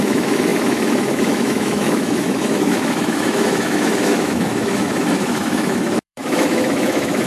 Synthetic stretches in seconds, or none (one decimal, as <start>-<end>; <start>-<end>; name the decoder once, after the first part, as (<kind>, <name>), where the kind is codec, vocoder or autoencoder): 0.0-7.3 (autoencoder, DAC-VAE)